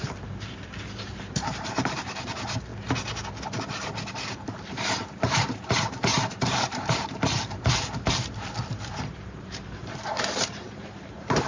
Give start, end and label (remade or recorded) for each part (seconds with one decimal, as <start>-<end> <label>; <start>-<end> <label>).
0.0-2.7 remade; 2.7-4.1 recorded; 4.1-11.5 remade